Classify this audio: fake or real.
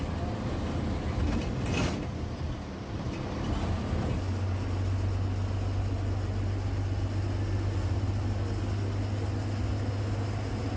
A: real